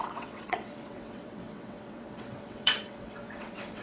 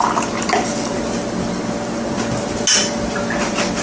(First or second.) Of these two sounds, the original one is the second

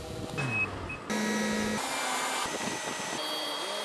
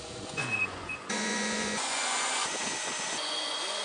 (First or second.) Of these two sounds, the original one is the first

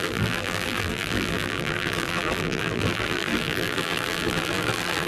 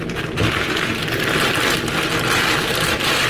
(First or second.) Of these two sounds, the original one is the second